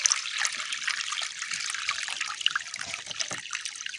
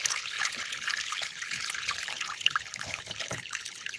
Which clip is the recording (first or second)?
first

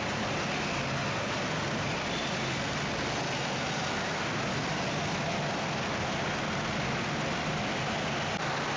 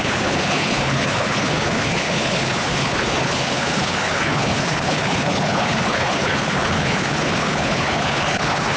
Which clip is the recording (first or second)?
first